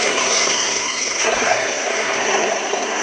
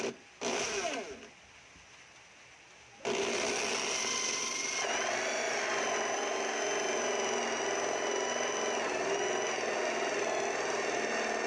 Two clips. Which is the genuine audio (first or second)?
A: second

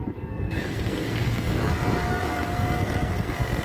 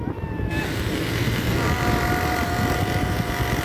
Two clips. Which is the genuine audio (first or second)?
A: second